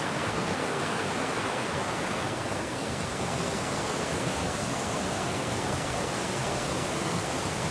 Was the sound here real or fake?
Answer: fake